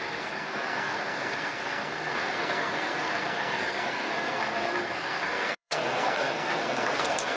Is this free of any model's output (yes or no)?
no